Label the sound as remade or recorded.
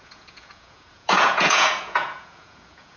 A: remade